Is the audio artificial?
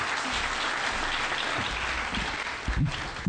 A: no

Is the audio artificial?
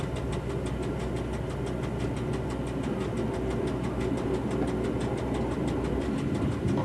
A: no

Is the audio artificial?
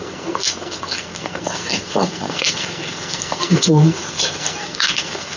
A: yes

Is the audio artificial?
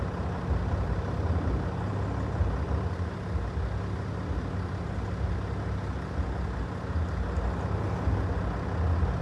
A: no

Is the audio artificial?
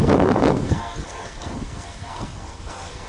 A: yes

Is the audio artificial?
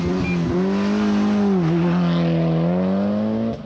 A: no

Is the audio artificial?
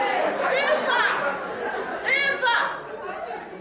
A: no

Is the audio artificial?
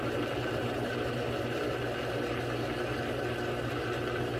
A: no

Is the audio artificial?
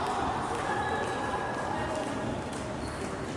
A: no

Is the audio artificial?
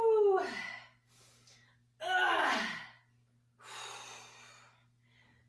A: no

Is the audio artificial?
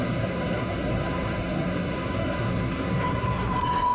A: yes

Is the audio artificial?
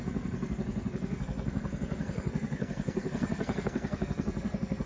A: yes